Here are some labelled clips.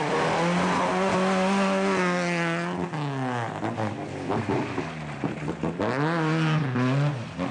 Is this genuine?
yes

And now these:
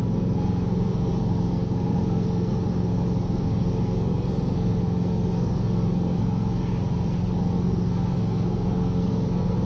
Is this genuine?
no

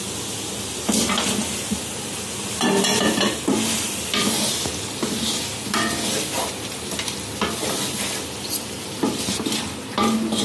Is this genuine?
yes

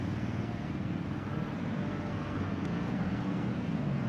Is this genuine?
no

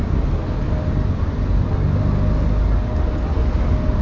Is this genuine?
yes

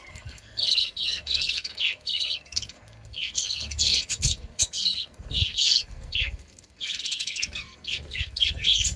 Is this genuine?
no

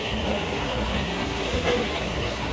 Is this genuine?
no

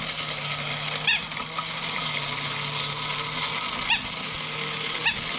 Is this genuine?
yes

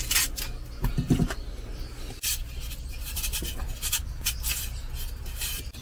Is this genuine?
yes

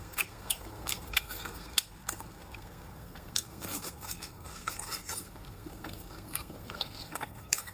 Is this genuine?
no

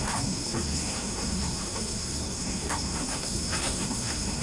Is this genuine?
no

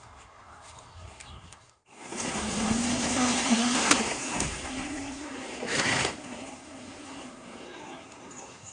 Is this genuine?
no